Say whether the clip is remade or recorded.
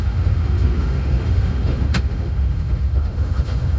remade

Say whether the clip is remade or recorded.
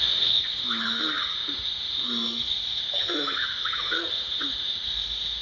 remade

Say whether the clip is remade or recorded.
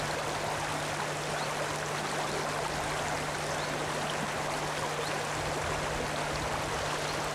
recorded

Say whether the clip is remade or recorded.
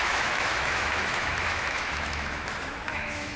remade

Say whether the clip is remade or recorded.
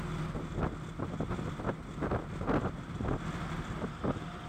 recorded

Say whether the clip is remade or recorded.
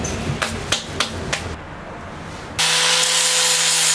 recorded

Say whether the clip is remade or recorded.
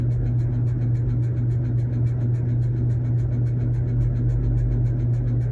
recorded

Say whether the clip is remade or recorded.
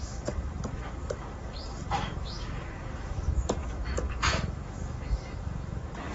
remade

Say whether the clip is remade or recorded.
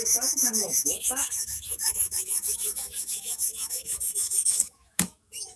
remade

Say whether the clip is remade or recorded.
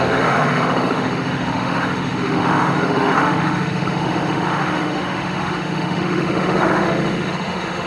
remade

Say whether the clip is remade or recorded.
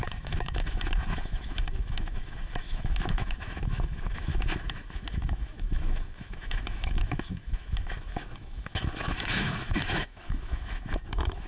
remade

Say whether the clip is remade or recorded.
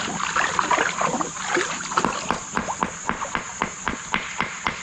recorded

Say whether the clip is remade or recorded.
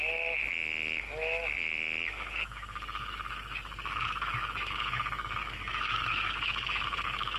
remade